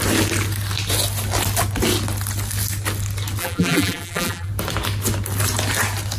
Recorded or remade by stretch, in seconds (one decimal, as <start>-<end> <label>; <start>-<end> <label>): 0.0-3.4 recorded; 3.4-4.5 remade; 4.5-6.2 recorded